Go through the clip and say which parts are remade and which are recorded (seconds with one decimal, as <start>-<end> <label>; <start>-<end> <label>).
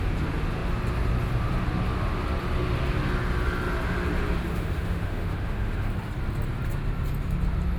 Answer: 0.0-4.5 recorded; 4.5-5.9 remade; 5.9-7.8 recorded